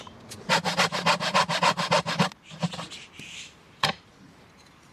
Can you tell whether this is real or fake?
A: real